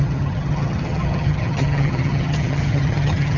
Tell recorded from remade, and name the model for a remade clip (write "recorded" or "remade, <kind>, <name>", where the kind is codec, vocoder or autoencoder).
remade, vocoder, HiFi-GAN